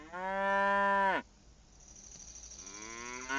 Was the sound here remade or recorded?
recorded